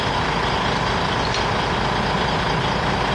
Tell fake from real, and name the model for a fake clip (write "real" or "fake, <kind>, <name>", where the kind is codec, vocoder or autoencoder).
real